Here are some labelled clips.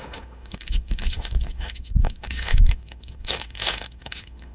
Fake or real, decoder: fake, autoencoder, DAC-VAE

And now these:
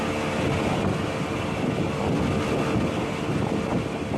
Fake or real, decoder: real